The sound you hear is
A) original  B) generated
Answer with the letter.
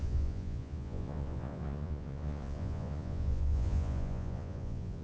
B